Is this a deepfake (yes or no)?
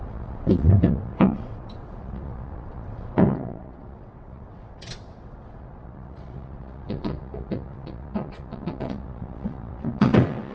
yes